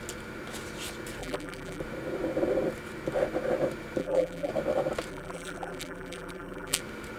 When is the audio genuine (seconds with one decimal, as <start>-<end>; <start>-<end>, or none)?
0.0-1.2; 1.8-4.0; 4.5-5.1; 6.8-7.2